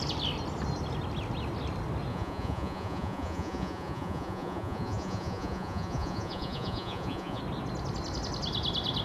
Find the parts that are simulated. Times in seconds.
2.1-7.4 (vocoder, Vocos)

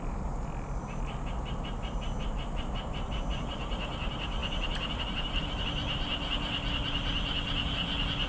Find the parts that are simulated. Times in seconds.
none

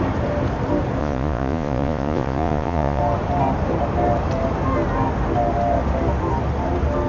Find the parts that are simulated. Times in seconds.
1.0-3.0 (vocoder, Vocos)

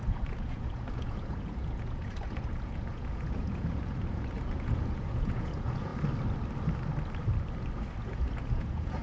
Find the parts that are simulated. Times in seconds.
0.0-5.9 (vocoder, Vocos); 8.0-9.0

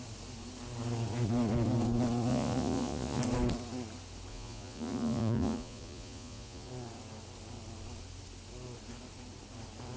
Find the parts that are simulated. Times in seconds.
2.3-3.2 (vocoder, Vocos); 4.3-6.7